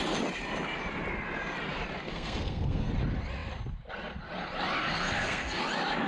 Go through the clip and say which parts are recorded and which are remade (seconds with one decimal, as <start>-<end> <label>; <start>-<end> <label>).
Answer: 0.0-2.1 recorded; 2.1-2.9 remade; 2.9-4.8 recorded; 4.8-5.6 remade; 5.6-6.1 recorded